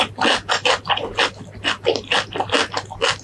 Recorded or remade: recorded